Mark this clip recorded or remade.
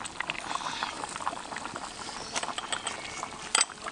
recorded